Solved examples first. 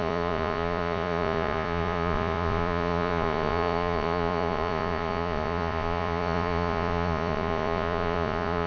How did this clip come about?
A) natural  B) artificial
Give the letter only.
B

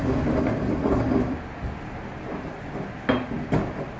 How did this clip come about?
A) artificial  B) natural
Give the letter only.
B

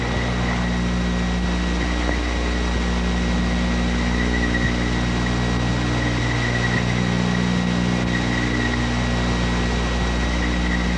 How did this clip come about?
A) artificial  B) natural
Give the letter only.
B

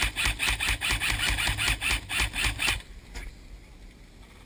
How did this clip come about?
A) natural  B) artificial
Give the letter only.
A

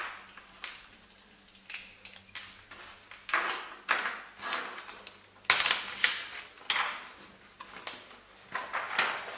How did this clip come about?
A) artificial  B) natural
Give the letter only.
B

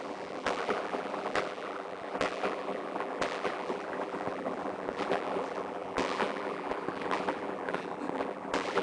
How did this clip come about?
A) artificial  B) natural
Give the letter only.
A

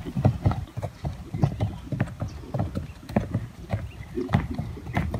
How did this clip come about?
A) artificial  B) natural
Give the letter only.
B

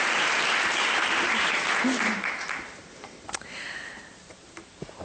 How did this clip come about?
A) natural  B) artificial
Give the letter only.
B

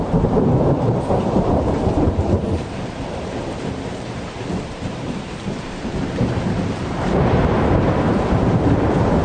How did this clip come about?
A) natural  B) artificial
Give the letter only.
B